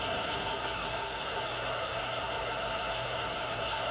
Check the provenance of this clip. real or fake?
fake